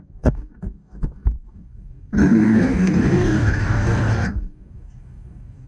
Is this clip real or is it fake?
fake